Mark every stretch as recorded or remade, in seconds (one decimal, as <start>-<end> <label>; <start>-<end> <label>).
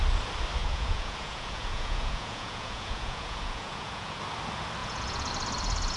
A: 0.0-0.6 recorded; 0.6-4.2 remade; 4.2-4.8 recorded; 4.8-5.3 remade; 5.3-6.0 recorded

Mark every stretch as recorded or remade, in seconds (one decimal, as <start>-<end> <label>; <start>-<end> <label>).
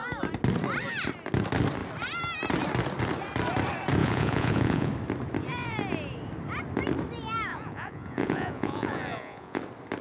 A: 0.0-4.0 recorded; 4.0-4.9 remade; 4.9-7.5 recorded; 7.5-9.6 remade; 9.6-10.0 recorded